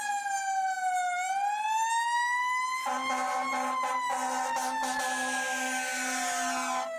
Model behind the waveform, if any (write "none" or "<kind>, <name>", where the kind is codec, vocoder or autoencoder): none